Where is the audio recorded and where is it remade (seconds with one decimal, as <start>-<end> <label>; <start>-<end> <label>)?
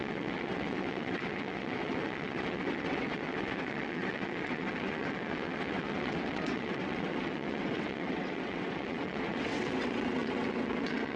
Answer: 0.0-11.2 remade